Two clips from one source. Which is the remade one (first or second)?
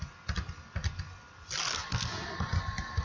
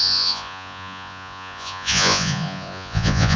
second